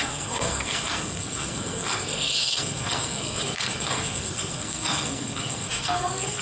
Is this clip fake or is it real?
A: fake